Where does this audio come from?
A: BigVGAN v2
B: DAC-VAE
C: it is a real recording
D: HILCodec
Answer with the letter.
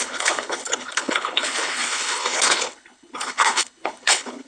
D